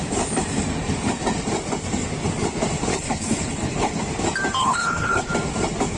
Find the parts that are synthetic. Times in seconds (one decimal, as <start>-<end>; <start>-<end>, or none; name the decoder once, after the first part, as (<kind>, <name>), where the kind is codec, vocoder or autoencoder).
2.9-4.0 (codec, HILCodec); 4.6-5.3